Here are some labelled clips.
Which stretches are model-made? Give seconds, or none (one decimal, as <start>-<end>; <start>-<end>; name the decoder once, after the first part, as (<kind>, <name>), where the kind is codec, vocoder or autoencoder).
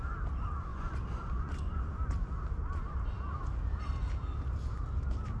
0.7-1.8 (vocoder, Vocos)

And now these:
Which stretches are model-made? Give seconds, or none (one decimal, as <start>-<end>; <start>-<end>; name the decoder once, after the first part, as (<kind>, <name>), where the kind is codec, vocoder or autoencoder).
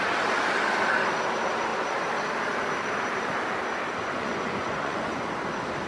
4.0-5.3 (vocoder, Vocos)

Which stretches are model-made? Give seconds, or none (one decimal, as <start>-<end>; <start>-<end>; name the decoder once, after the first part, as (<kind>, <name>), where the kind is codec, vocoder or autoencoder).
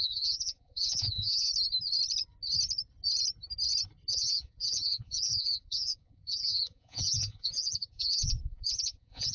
0.0-1.5 (vocoder, Vocos); 4.1-9.3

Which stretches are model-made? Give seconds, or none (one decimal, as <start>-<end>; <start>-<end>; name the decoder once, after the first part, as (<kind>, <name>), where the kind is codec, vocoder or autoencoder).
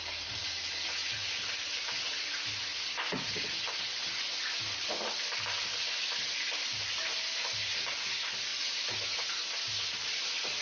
none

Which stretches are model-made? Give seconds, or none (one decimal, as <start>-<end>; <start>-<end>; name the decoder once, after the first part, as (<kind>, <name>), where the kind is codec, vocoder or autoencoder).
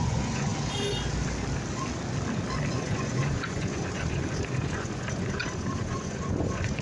0.0-0.5 (vocoder, Vocos); 2.7-6.8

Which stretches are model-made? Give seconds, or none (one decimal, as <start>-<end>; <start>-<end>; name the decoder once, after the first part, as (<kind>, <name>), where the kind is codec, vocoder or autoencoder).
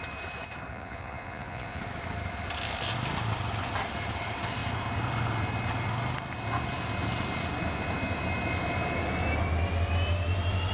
0.7-1.8 (vocoder, Vocos)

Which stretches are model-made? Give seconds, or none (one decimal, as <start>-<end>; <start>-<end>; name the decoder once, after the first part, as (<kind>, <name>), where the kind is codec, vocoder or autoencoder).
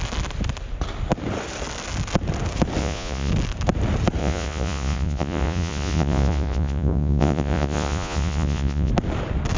2.8-3.3 (vocoder, Vocos); 4.2-8.9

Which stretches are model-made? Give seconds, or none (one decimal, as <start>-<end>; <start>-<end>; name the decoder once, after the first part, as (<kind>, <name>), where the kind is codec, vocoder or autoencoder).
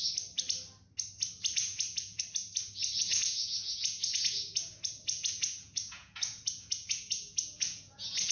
1.6-2.2 (vocoder, Vocos); 3.0-8.3